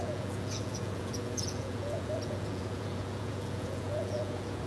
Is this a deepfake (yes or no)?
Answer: yes